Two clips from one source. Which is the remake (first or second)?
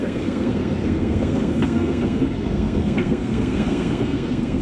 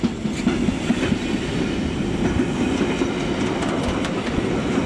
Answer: first